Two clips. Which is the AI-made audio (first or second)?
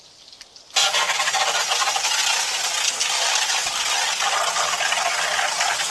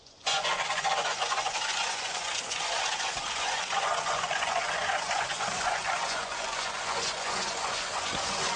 second